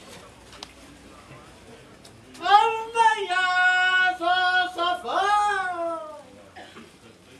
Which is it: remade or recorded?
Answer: recorded